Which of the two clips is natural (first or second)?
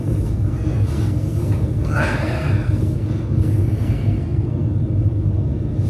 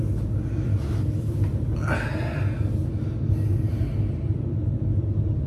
second